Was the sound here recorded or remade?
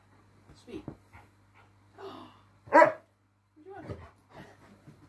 recorded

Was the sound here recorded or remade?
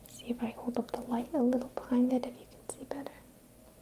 recorded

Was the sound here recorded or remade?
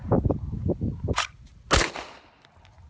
recorded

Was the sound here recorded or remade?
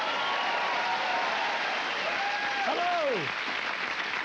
recorded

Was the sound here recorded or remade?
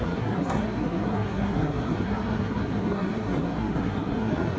remade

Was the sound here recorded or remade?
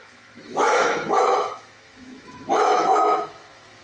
remade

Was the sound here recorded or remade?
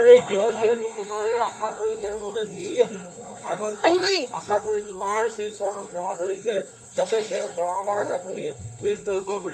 remade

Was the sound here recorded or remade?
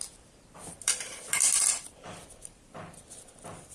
remade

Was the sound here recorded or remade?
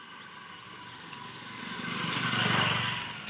recorded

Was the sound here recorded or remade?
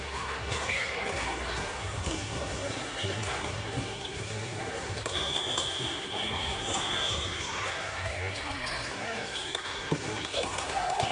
remade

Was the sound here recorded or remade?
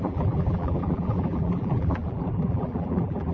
remade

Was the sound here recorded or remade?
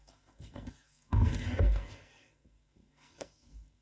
remade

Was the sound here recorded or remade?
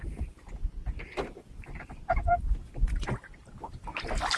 recorded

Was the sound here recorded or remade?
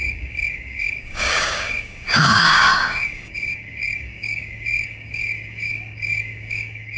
remade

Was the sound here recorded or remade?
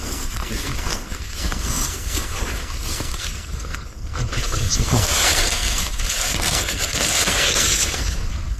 remade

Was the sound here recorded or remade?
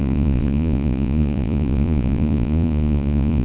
remade